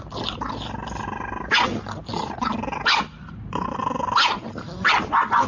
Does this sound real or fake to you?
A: real